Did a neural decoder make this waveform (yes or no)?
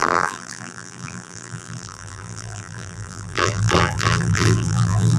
yes